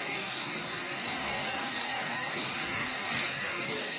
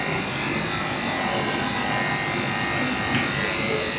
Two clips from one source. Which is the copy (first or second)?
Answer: first